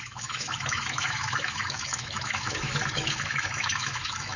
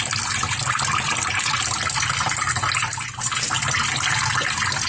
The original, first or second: second